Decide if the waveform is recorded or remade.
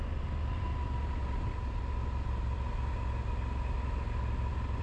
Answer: recorded